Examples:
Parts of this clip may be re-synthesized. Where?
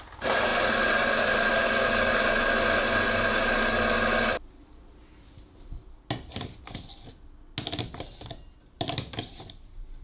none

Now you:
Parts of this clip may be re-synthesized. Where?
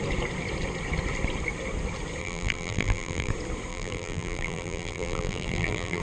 2.2-3.3; 3.7-6.0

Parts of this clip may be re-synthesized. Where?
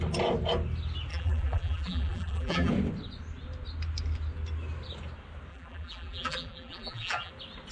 1.1-2.7; 5.5-7.3